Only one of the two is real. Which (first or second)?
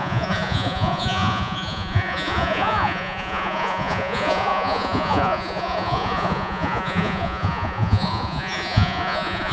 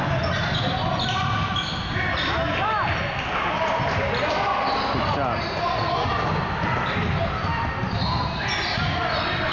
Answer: second